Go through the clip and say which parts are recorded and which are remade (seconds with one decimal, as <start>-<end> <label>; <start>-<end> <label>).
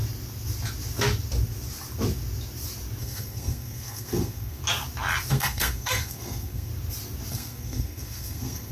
0.0-3.0 recorded; 3.0-4.6 remade; 4.6-5.3 recorded; 5.3-6.7 remade; 6.7-7.3 recorded; 7.3-8.7 remade